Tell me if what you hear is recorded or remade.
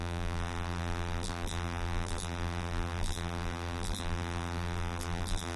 remade